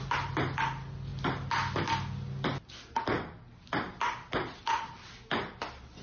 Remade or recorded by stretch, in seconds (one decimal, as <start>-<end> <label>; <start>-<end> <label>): 0.0-6.0 recorded